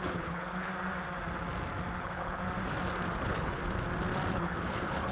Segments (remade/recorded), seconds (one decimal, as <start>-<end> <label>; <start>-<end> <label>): 0.0-0.7 remade; 0.7-2.0 recorded; 2.0-2.4 remade; 2.4-3.2 recorded; 3.2-3.6 remade; 3.6-4.3 recorded; 4.3-5.1 remade